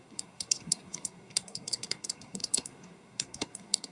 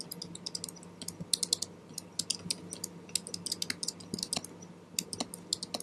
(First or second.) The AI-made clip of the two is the first